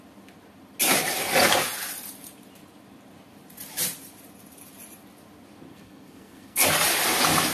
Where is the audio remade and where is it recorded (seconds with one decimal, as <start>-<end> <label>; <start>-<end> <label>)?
0.0-5.7 recorded; 5.7-6.7 remade; 6.7-7.5 recorded